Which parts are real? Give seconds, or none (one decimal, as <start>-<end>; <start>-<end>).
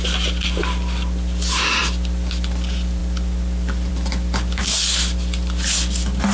0.0-6.3